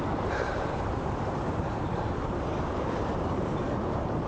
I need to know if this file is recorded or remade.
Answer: remade